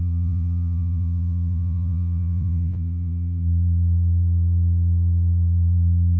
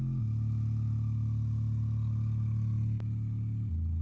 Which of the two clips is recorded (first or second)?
second